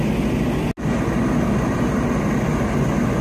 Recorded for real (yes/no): yes